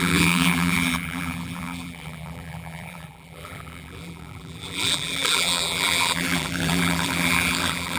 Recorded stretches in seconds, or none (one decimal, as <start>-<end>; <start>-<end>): none